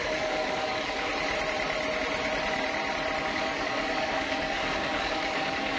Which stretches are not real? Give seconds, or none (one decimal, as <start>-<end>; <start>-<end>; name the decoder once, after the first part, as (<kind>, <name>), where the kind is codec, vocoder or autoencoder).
0.0-1.1 (codec, DAC); 3.2-5.8